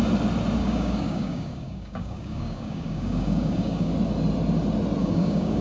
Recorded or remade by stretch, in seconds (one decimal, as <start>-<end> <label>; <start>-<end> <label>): 0.0-0.6 recorded; 0.6-3.9 remade; 3.9-5.0 recorded; 5.0-5.6 remade